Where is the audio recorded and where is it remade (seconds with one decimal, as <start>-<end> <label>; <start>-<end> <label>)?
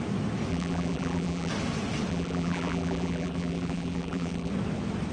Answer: 0.0-0.5 recorded; 0.5-1.5 remade; 1.5-2.1 recorded; 2.1-4.5 remade; 4.5-5.1 recorded